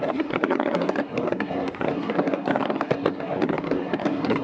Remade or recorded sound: remade